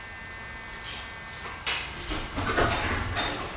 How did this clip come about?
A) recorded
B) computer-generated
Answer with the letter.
A